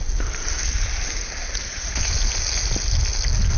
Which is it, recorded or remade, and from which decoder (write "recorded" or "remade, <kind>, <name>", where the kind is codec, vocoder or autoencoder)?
recorded